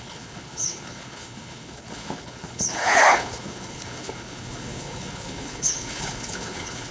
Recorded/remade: remade